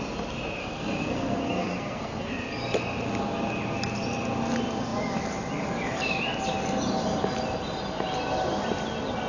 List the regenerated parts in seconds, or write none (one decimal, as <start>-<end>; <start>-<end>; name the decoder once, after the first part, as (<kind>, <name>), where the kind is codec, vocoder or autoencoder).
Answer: 0.6-2.3 (codec, SNAC)